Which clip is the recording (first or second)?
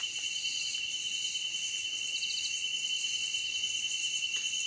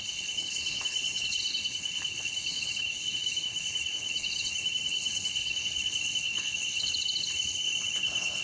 first